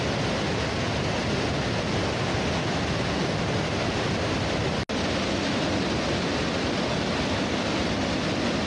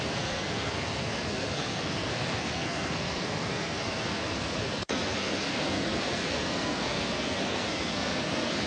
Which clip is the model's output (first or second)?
second